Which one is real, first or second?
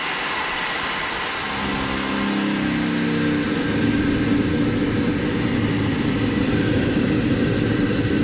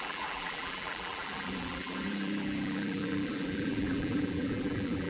first